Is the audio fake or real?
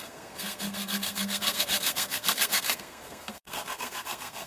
fake